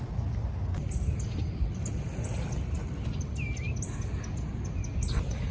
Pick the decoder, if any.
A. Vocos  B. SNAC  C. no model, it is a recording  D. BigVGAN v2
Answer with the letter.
C